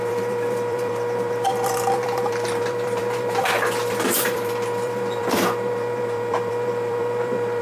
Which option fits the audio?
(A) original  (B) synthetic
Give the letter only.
B